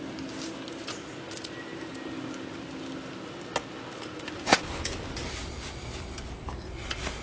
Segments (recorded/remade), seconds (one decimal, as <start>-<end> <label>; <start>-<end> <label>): 0.0-7.2 recorded